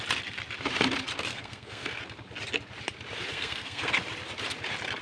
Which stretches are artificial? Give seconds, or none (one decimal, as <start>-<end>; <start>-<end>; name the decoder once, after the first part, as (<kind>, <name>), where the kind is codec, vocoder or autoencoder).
1.3-2.0 (codec, SNAC); 3.3-3.9